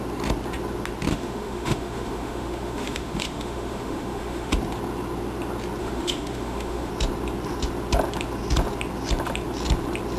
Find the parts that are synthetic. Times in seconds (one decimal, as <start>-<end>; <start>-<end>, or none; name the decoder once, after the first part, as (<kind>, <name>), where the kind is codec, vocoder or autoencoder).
1.1-4.5 (autoencoder, DAC-VAE); 5.8-6.9